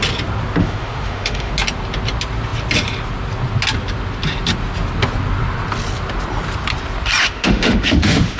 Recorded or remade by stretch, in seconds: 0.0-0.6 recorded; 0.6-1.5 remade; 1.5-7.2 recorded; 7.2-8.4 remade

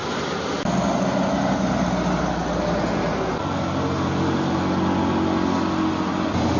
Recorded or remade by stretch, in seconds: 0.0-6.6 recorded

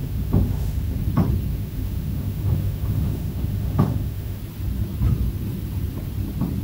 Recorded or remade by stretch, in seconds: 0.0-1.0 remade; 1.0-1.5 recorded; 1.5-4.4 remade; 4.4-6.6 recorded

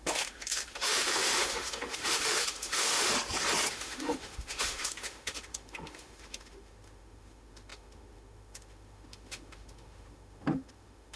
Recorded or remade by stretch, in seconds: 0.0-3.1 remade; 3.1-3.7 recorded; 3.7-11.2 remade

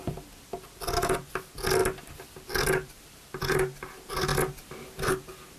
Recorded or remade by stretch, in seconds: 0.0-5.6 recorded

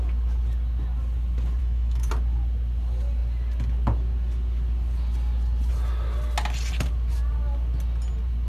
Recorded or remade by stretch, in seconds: 0.0-1.6 recorded; 1.6-2.1 remade; 2.1-8.5 recorded